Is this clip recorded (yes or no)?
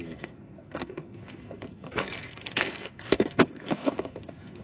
no